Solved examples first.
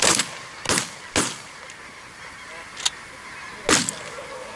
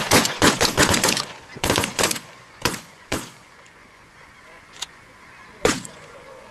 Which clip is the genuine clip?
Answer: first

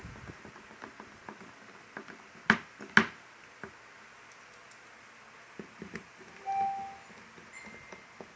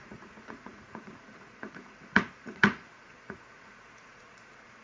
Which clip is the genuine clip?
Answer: first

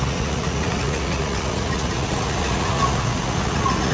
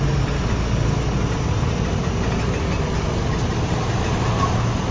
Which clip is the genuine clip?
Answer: second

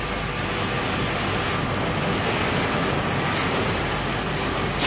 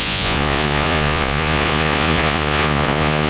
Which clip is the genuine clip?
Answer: first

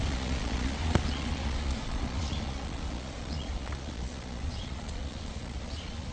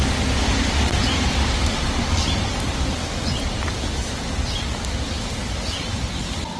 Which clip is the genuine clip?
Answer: second